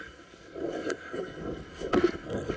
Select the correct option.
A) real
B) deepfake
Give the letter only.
B